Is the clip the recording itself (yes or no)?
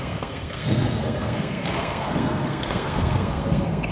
no